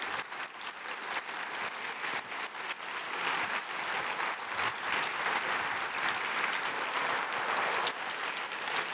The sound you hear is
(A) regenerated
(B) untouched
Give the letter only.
B